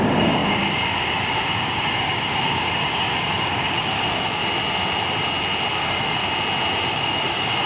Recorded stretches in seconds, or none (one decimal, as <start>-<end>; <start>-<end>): 4.4-5.7; 6.2-6.9